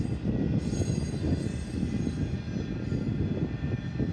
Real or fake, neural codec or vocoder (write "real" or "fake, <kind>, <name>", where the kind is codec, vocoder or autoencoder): real